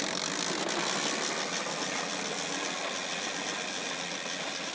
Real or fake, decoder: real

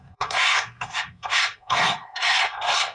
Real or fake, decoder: fake, codec, SNAC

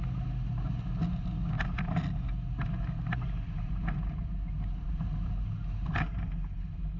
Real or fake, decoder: real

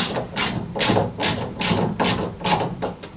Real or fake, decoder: real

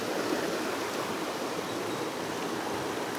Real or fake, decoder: real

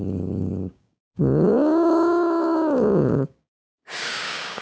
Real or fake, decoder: fake, codec, DAC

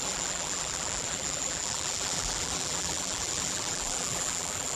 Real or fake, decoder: fake, vocoder, BigVGAN v2